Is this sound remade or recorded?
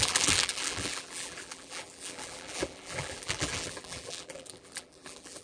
remade